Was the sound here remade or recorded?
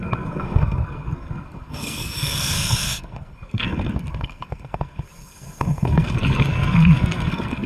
remade